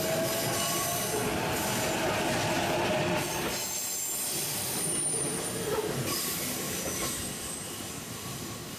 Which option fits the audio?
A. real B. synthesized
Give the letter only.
A